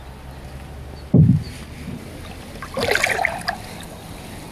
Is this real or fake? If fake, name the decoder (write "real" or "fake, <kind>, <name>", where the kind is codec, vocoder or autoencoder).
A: real